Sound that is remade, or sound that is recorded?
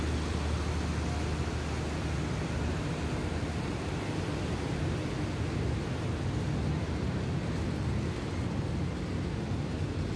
recorded